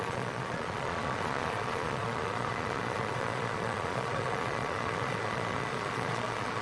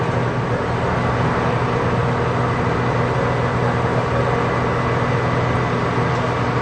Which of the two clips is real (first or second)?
second